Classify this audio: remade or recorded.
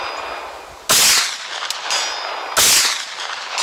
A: recorded